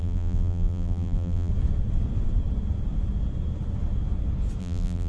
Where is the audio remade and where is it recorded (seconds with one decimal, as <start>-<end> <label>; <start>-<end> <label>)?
0.0-1.5 remade; 1.5-4.6 recorded; 4.6-5.1 remade

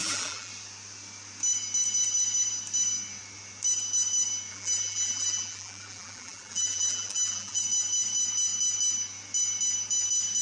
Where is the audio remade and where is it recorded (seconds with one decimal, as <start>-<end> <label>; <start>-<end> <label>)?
0.0-0.5 remade; 0.5-4.5 recorded; 4.5-7.6 remade; 7.6-10.4 recorded

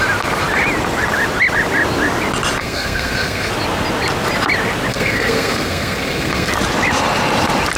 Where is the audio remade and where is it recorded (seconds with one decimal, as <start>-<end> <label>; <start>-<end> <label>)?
0.0-2.6 recorded; 2.6-3.5 remade; 3.5-4.9 recorded; 4.9-6.5 remade; 6.5-7.8 recorded

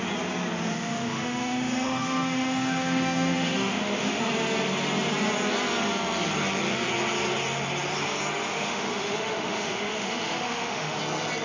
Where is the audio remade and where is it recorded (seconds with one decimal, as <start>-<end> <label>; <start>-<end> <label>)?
0.0-0.7 recorded; 0.7-4.2 remade; 4.2-8.5 recorded; 8.5-11.0 remade; 11.0-11.4 recorded

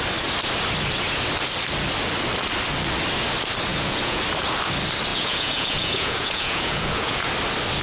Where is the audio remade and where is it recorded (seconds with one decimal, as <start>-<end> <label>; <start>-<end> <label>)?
0.0-3.7 recorded; 3.7-4.2 remade; 4.2-5.1 recorded; 5.1-7.3 remade; 7.3-7.8 recorded